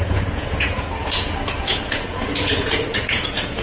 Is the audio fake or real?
fake